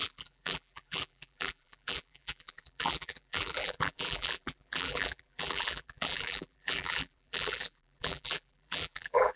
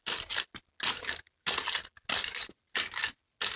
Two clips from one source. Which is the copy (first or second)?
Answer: first